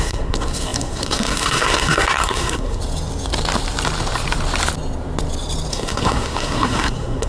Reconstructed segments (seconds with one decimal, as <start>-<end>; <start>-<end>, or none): 0.0-2.8; 5.7-7.3